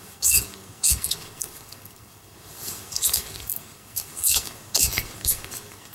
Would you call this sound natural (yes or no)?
no